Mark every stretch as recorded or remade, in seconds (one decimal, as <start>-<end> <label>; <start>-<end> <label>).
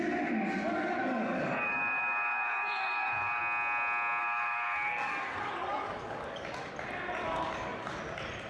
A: 0.0-0.7 recorded; 0.7-3.4 remade; 3.4-4.2 recorded; 4.2-6.7 remade; 6.7-7.2 recorded; 7.2-8.0 remade; 8.0-8.5 recorded